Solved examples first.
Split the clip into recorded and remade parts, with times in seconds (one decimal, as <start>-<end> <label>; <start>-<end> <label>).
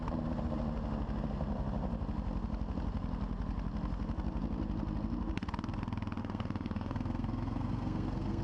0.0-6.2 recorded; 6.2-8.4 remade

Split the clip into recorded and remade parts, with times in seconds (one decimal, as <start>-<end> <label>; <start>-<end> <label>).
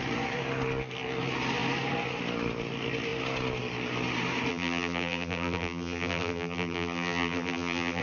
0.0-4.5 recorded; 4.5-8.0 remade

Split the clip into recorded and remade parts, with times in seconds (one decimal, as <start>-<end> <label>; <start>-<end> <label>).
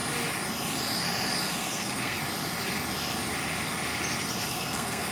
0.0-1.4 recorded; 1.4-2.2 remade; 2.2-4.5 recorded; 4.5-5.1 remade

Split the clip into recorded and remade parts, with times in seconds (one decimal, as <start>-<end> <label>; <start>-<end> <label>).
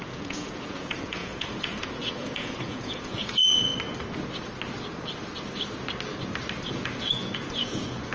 0.0-3.7 remade; 3.7-6.7 recorded; 6.7-8.1 remade